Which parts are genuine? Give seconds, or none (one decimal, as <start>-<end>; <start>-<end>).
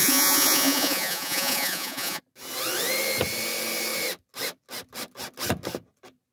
2.2-6.3